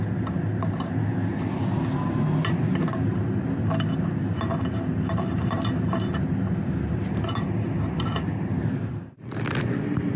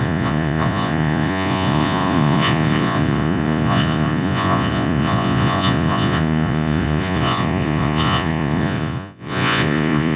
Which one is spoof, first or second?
second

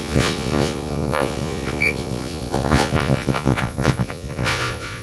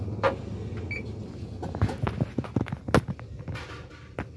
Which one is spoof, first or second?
first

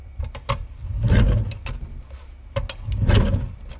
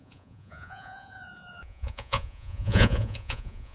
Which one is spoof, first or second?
second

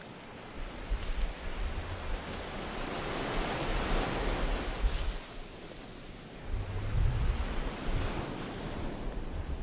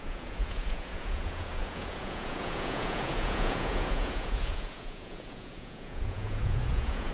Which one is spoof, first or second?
second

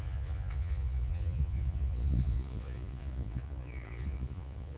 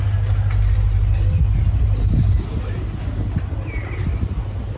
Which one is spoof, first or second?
first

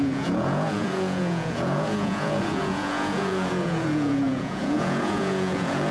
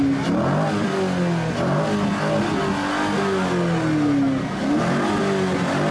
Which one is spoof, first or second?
first